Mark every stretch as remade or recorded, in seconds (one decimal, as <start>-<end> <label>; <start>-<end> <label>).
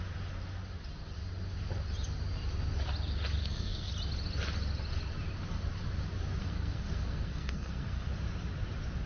0.0-3.4 recorded; 3.4-3.9 remade; 3.9-6.4 recorded; 6.4-8.1 remade; 8.1-9.1 recorded